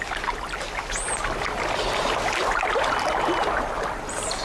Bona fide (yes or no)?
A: yes